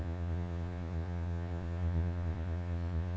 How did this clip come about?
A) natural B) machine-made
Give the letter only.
B